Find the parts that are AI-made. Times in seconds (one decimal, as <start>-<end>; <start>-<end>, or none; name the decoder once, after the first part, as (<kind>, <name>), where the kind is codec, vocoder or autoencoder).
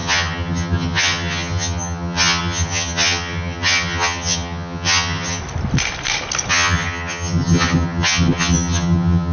0.0-5.4 (vocoder, HiFi-GAN); 6.5-9.3